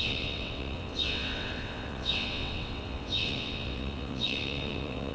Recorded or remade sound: remade